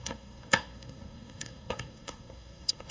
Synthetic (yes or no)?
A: yes